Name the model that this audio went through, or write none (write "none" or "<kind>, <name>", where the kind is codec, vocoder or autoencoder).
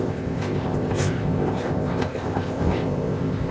codec, ZipCodec